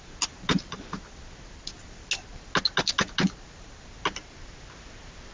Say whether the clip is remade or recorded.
recorded